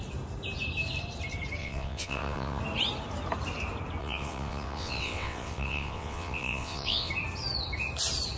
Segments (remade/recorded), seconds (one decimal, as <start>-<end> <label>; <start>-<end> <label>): 0.0-1.6 recorded; 1.6-2.6 remade; 2.6-4.0 recorded; 4.0-7.1 remade; 7.1-8.4 recorded